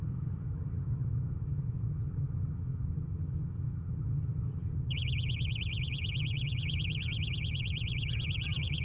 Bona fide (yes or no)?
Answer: no